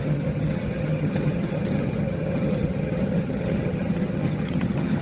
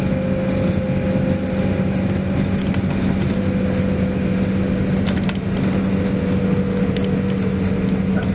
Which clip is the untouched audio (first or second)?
second